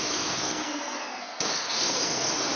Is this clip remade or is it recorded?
remade